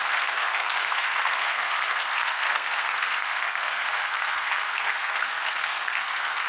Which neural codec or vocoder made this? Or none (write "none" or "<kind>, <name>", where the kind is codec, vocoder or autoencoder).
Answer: codec, SNAC